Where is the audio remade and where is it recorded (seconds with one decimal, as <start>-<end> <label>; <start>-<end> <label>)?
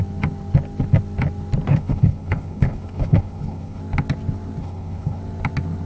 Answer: 0.0-1.7 recorded; 1.7-3.8 remade; 3.8-4.6 recorded; 4.6-5.2 remade; 5.2-5.9 recorded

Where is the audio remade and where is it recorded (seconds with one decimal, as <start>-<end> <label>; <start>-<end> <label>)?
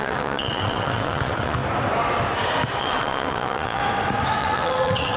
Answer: 0.0-1.6 remade; 1.6-2.8 recorded; 2.8-3.8 remade; 3.8-4.4 recorded; 4.4-5.2 remade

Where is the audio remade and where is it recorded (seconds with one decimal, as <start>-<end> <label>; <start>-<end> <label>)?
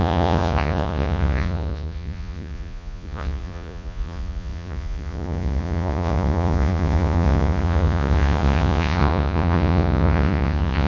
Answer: 0.0-10.9 remade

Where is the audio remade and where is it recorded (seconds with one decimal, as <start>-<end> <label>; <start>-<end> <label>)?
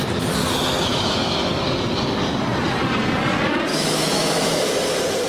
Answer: 0.0-0.9 recorded; 0.9-1.5 remade; 1.5-3.7 recorded; 3.7-4.7 remade; 4.7-5.3 recorded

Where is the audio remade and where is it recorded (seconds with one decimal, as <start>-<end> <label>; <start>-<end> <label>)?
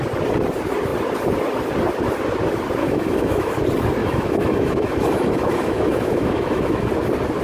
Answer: 0.0-2.8 recorded; 2.8-3.5 remade; 3.5-4.0 recorded; 4.0-6.9 remade; 6.9-7.4 recorded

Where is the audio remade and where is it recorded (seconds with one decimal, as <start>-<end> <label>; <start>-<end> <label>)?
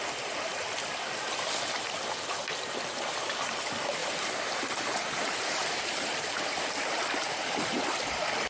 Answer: 0.0-4.0 recorded; 4.0-7.8 remade; 7.8-8.5 recorded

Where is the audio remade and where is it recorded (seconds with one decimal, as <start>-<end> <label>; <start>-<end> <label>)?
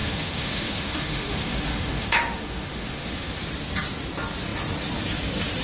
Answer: 0.0-3.4 remade; 3.4-5.6 recorded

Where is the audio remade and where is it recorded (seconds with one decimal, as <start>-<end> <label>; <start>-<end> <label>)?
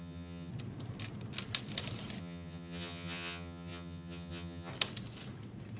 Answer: 0.0-0.5 remade; 0.5-2.2 recorded; 2.2-4.7 remade; 4.7-5.8 recorded